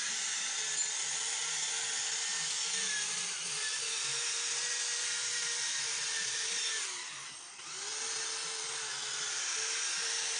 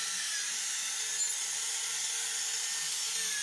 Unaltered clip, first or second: second